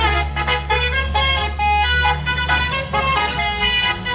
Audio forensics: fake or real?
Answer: fake